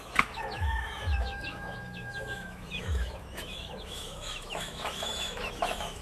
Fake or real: fake